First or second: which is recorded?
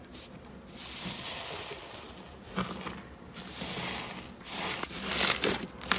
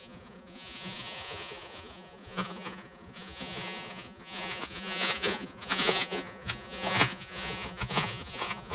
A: first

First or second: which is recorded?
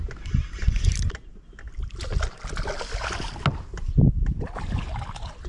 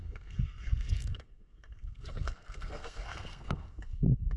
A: first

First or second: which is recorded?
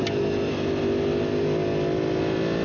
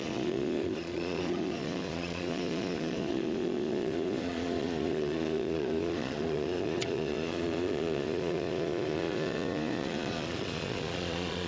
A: first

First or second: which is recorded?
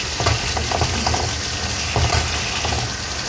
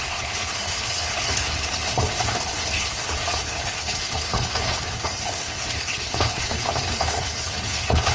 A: first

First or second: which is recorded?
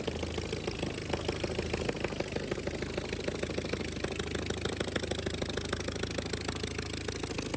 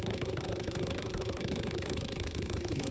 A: first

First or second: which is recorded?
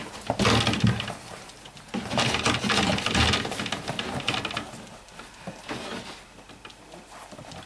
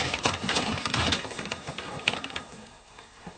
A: first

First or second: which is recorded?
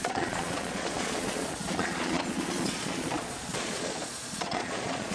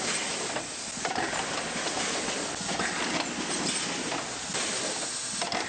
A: second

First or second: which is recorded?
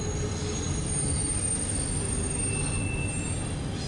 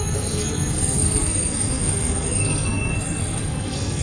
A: first